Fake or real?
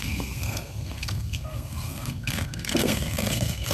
fake